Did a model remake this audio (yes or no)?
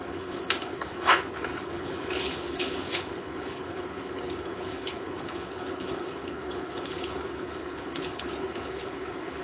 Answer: yes